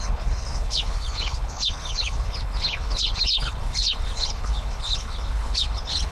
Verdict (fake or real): fake